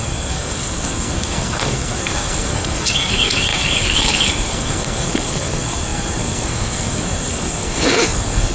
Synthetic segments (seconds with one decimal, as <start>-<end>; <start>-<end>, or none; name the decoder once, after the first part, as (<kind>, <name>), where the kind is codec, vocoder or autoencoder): 0.0-8.5 (codec, SNAC)